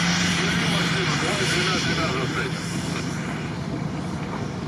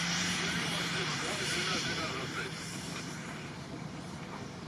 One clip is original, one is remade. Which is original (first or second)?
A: first